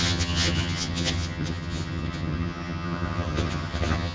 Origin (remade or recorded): remade